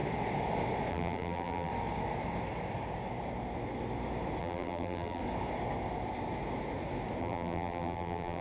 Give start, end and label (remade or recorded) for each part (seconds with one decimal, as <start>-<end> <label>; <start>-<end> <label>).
0.0-0.9 recorded; 0.9-1.7 remade; 1.7-4.4 recorded; 4.4-5.2 remade; 5.2-7.2 recorded; 7.2-8.4 remade